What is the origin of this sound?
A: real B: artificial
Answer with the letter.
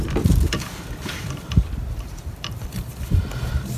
B